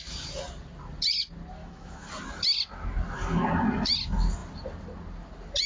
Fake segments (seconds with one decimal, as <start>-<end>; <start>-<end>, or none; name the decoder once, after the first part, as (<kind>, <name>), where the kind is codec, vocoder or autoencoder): 1.6-2.1 (autoencoder, DAC-VAE)